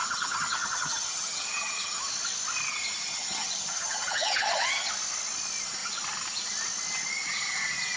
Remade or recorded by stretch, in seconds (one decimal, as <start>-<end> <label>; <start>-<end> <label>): 0.0-2.0 remade; 2.0-3.0 recorded; 3.0-4.9 remade; 4.9-8.0 recorded